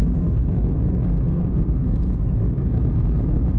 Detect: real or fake fake